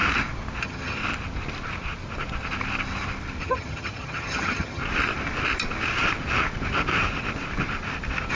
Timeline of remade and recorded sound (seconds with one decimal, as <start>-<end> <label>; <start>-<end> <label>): 0.0-0.6 recorded; 0.6-1.0 remade; 1.0-3.4 recorded; 3.4-4.8 remade; 4.8-8.3 recorded